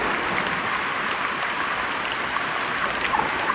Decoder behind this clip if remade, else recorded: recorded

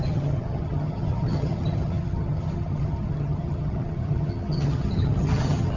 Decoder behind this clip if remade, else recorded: remade, vocoder, HiFi-GAN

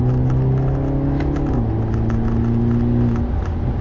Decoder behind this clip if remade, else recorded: recorded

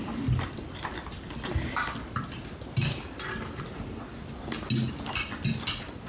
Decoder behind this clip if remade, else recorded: recorded